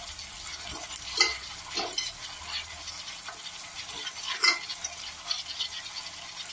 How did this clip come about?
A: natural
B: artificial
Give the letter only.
A